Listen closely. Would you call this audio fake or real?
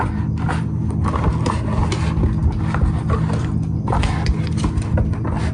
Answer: real